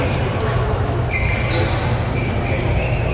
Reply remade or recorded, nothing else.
recorded